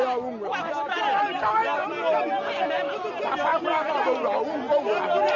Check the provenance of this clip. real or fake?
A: real